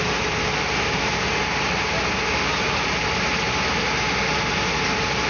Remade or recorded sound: recorded